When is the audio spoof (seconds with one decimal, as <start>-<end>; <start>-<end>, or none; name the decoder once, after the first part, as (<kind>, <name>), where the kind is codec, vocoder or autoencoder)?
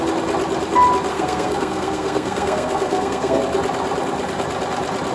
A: 1.1-3.4 (codec, SNAC)